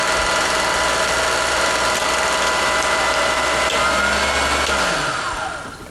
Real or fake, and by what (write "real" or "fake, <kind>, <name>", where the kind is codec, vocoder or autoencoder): real